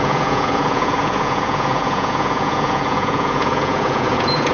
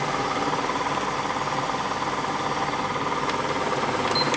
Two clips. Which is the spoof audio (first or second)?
first